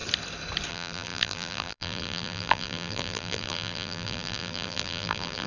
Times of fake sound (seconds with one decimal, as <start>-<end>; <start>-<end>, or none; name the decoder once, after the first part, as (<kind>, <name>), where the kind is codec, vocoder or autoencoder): 0.7-5.5 (vocoder, BigVGAN v2)